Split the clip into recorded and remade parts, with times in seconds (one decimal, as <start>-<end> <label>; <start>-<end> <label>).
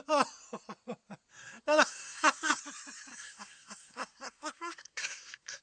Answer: 0.0-1.3 recorded; 1.3-2.6 remade; 2.6-3.1 recorded; 3.1-5.6 remade